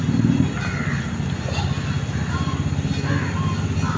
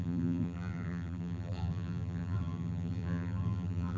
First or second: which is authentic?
first